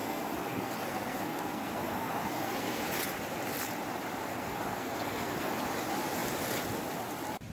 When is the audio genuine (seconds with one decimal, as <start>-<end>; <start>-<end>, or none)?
2.8-4.2; 5.5-7.5